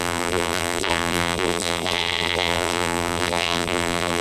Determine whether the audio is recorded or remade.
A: remade